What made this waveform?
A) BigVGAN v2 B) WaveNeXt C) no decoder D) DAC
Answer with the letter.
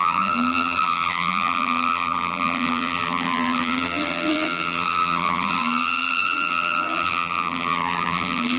A